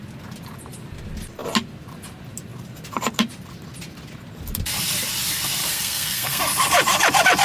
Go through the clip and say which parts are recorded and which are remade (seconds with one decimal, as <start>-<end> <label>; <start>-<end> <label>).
0.0-5.6 recorded; 5.6-6.4 remade; 6.4-7.4 recorded